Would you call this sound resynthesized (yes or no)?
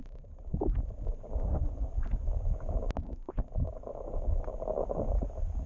no